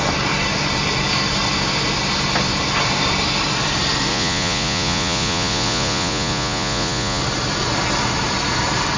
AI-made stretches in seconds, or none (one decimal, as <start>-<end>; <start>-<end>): 4.1-7.2